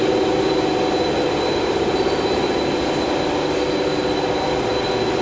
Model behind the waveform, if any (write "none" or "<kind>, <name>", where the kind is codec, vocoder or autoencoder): none